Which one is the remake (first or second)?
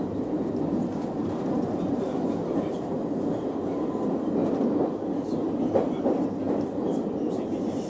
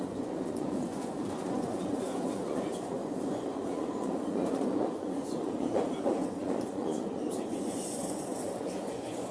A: second